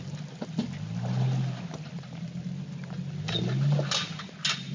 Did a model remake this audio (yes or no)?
no